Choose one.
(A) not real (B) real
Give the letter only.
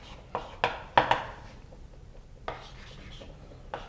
B